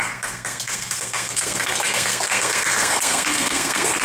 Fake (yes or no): yes